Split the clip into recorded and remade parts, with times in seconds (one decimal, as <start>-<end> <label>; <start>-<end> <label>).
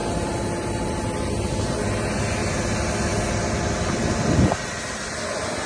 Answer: 0.0-5.7 recorded